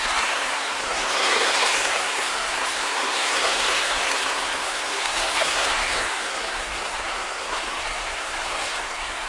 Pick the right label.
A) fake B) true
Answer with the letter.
A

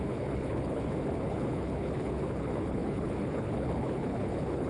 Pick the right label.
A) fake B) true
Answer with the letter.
A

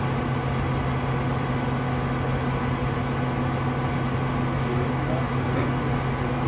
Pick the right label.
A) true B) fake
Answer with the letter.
A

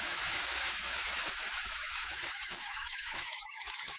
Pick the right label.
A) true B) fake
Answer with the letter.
B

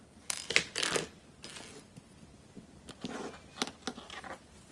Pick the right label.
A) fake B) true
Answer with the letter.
B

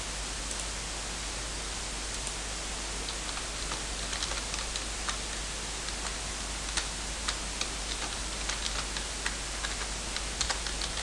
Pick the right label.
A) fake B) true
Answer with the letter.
B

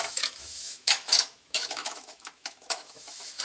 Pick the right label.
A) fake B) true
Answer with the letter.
A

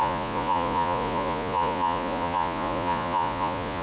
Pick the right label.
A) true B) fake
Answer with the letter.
B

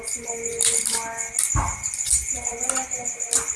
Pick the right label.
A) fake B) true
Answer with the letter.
B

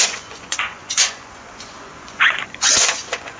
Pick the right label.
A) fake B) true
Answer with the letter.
A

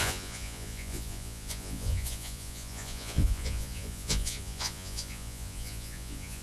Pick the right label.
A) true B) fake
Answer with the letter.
B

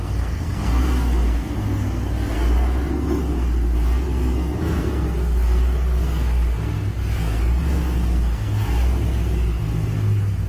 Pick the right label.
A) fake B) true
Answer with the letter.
A